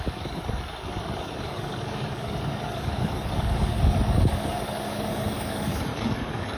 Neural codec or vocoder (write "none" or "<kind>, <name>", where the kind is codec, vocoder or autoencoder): codec, DAC